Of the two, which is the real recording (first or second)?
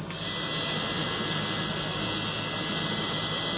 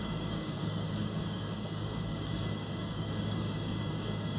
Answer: first